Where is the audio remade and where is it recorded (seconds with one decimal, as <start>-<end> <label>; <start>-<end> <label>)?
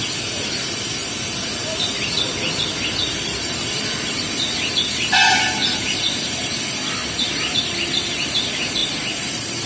0.0-9.7 remade